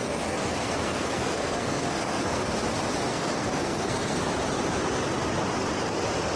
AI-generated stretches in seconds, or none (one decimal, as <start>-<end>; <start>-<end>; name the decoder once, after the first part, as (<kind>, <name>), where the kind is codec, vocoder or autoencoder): 0.0-2.5 (codec, SNAC); 3.1-4.2